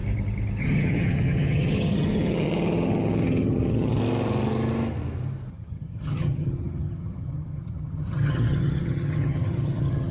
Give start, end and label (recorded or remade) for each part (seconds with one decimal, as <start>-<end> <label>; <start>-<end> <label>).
0.0-0.6 recorded; 0.6-4.0 remade; 4.0-5.5 recorded; 5.5-10.1 remade